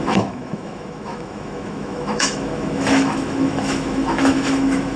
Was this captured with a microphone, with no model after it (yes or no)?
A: no